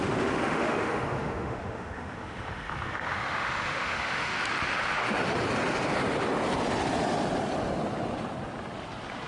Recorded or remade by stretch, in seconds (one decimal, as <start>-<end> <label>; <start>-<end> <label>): 0.0-4.3 remade; 4.3-9.3 recorded